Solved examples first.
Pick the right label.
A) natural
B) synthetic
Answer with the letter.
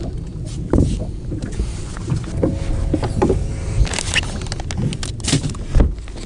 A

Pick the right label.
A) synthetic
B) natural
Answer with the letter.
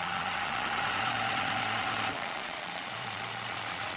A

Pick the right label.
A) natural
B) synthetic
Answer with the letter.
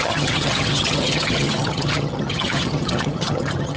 B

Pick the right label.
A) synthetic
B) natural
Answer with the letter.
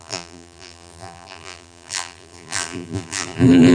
A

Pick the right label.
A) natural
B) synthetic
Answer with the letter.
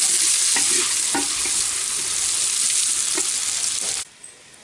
A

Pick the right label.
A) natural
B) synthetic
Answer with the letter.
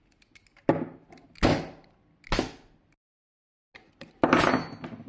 A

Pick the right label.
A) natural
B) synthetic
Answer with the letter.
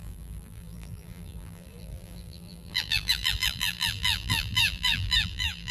B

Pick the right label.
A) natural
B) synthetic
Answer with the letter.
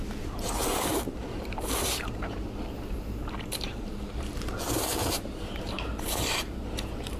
B